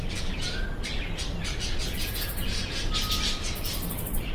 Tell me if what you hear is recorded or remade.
recorded